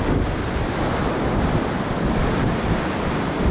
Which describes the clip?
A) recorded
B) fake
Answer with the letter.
A